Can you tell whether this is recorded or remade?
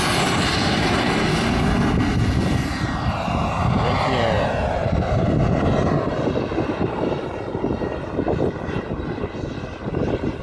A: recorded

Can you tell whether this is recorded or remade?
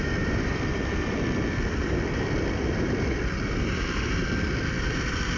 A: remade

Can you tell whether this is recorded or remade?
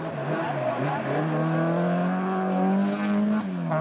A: recorded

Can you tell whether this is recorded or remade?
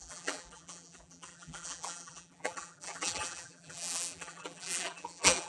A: remade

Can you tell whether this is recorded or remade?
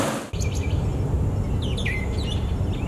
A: recorded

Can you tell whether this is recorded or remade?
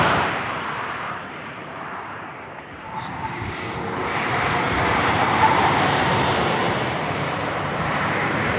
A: remade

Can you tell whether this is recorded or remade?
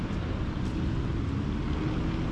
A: recorded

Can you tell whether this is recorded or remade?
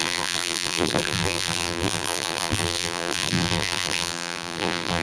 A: remade